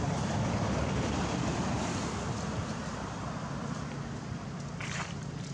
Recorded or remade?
remade